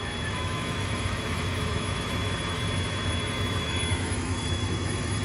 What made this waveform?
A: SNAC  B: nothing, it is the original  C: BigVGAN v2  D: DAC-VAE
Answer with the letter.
D